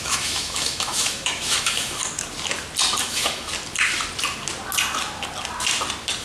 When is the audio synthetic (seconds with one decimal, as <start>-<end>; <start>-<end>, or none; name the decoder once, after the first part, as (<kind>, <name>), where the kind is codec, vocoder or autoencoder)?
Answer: 0.0-2.0 (autoencoder, DAC-VAE); 3.0-3.5